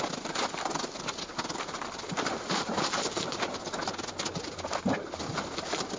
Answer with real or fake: real